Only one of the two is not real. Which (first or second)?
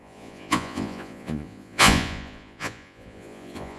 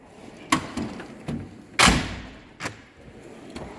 first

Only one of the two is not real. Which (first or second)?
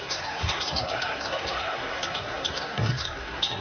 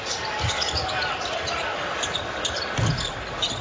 first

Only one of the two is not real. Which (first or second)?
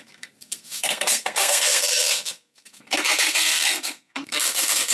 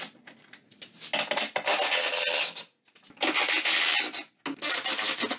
first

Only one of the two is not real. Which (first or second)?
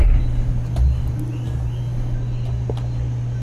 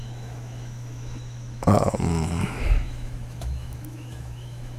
second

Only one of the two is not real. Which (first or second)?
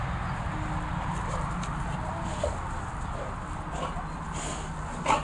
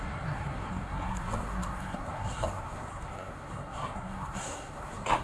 second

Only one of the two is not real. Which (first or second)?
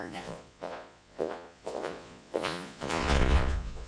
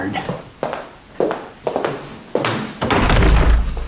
first